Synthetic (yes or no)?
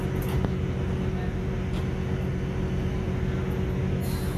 no